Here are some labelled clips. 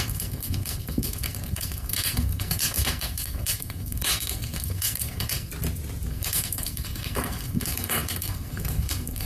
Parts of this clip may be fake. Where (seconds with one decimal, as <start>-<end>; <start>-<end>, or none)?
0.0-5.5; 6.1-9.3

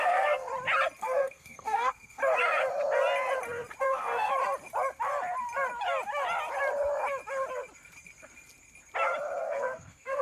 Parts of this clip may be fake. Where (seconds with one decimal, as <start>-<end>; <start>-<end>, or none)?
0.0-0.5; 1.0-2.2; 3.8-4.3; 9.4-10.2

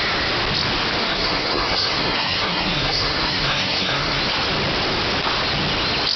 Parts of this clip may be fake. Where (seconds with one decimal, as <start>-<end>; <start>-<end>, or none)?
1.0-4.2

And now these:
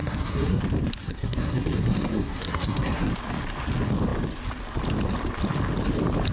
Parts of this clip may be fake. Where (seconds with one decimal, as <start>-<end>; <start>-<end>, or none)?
0.0-0.6; 1.0-3.1

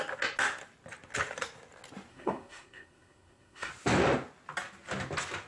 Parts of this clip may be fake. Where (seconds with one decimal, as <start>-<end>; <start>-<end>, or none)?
2.1-3.7

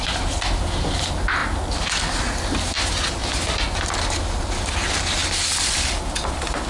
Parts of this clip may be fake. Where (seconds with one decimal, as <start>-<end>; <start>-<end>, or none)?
none